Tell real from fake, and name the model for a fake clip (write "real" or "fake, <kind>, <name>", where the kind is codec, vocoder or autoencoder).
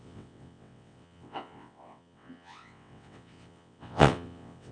fake, vocoder, WaveNeXt